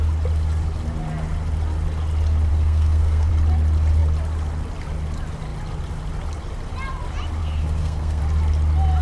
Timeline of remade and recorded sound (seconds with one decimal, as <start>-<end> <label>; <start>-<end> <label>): 0.0-2.5 recorded; 2.5-3.3 remade; 3.3-7.4 recorded; 7.4-8.2 remade; 8.2-9.0 recorded